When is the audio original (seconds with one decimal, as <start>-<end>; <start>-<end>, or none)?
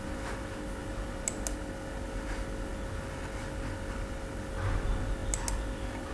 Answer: 0.0-6.1